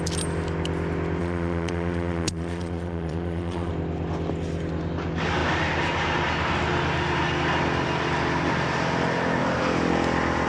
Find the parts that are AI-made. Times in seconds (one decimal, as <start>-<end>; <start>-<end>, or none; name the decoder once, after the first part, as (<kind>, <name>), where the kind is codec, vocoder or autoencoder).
1.2-3.7 (vocoder, Vocos)